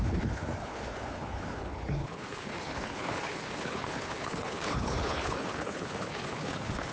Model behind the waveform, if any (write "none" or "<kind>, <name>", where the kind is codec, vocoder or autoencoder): codec, HILCodec